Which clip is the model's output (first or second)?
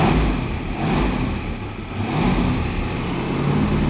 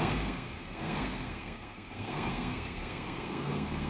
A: second